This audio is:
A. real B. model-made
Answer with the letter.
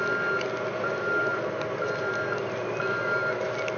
A